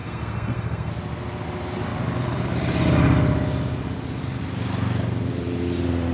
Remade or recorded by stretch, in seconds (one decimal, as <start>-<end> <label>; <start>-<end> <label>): 0.0-0.9 remade; 0.9-6.1 recorded